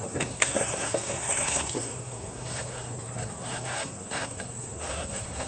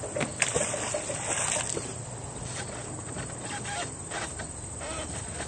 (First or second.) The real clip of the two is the second